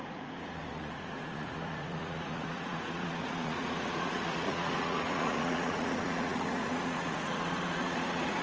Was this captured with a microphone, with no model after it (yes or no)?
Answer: no